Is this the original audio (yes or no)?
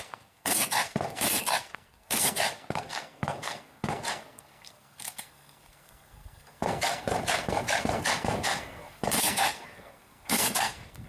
no